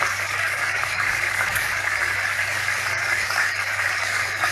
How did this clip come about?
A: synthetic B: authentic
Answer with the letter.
A